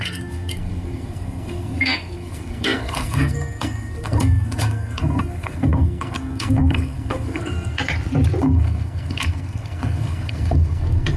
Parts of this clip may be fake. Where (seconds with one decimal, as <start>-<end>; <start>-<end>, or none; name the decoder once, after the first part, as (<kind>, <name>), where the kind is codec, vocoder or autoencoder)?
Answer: 0.0-7.8 (codec, SNAC); 8.4-11.2